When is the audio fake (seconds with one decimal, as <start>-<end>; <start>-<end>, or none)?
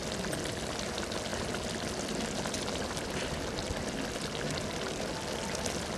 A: none